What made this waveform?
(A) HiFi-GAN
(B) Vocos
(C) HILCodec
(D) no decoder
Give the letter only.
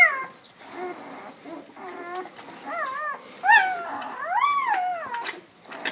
D